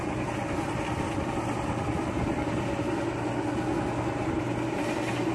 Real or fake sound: real